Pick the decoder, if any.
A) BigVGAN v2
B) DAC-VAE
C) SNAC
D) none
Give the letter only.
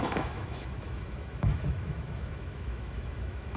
B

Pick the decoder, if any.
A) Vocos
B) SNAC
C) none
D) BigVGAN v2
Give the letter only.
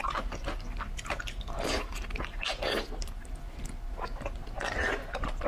C